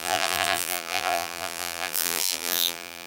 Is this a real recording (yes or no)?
no